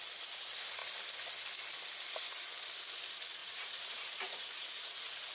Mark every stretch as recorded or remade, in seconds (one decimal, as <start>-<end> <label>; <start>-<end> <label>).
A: 0.0-3.4 recorded; 3.4-5.3 remade